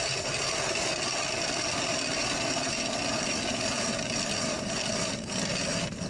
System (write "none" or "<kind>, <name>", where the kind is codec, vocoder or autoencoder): none